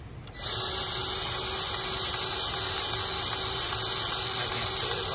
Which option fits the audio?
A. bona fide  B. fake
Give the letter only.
A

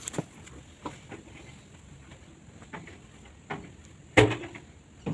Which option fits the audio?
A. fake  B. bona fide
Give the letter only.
B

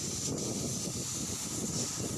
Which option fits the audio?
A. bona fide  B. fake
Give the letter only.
A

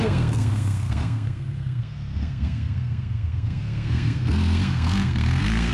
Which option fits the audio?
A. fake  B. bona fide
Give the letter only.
A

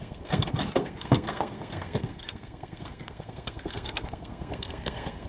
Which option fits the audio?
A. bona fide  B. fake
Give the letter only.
B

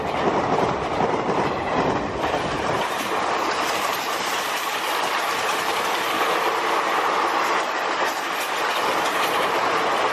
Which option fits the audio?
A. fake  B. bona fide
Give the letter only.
B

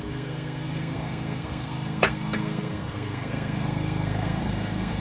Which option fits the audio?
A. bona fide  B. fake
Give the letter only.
B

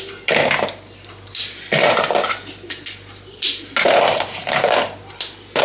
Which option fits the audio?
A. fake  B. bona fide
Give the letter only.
B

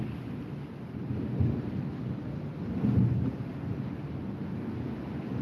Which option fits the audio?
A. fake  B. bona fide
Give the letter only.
B